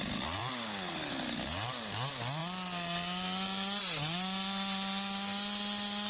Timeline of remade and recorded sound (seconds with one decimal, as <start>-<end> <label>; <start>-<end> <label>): 0.0-6.1 recorded